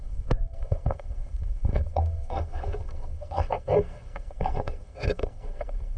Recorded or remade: remade